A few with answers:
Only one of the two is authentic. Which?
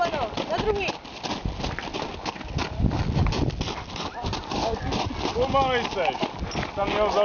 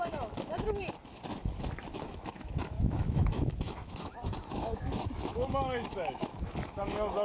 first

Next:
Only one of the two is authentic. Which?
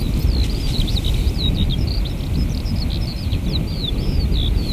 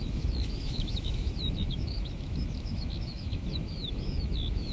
first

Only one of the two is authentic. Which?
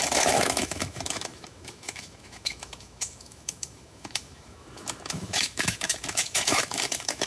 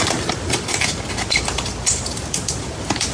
second